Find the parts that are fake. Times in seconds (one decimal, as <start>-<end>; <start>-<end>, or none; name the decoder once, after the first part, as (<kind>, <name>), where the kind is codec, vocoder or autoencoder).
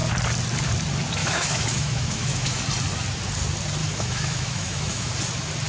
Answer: 1.2-2.6 (autoencoder, DAC-VAE); 3.8-5.1